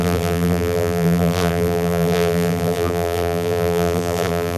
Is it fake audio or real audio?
fake